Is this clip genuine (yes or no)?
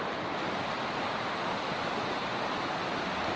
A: yes